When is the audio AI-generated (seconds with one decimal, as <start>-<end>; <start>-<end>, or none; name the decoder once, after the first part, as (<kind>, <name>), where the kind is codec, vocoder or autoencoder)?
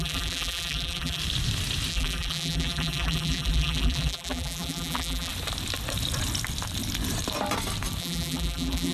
0.0-1.2 (vocoder, BigVGAN v2); 1.9-5.3; 8.0-8.9